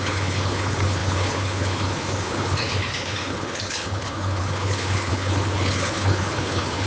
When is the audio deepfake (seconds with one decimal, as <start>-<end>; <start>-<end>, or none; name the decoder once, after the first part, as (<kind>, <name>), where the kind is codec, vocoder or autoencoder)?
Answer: 0.0-6.9 (codec, HILCodec)